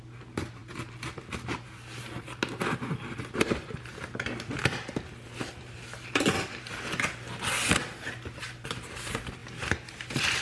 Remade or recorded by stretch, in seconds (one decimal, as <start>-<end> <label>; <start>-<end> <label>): 0.0-10.4 recorded